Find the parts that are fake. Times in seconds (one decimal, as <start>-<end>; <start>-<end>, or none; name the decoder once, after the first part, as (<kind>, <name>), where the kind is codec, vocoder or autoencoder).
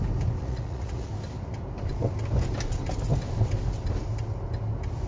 0.4-1.1 (vocoder, Vocos)